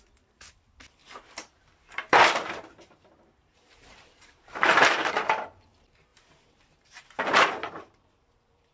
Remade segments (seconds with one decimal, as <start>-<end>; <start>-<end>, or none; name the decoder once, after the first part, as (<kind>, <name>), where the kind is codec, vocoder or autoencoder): 1.0-5.1 (vocoder, BigVGAN v2); 6.1-8.7